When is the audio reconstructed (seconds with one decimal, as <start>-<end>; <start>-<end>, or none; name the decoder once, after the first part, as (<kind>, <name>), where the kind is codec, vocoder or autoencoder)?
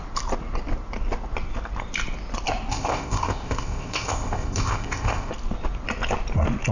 2.7-5.3 (codec, ZipCodec)